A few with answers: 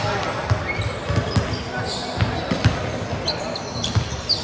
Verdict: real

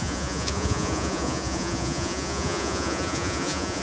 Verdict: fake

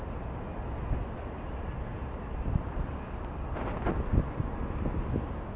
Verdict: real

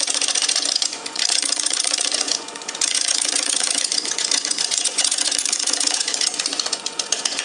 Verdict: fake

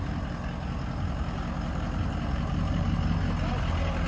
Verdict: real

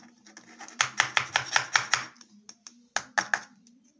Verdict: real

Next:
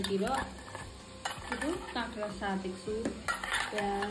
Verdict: real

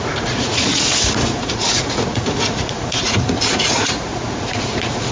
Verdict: fake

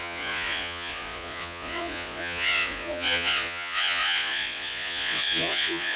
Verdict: fake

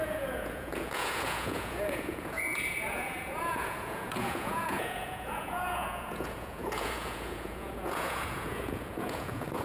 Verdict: fake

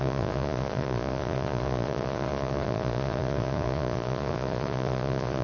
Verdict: fake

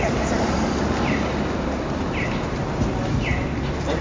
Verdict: real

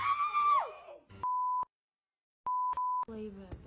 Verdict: real